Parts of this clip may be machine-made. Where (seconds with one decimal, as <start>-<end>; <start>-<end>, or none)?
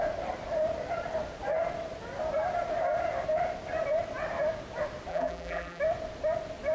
5.1-5.8